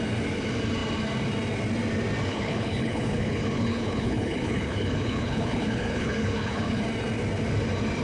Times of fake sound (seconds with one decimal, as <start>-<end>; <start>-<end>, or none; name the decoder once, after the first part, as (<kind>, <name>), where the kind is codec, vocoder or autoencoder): 2.3-6.8 (codec, HILCodec)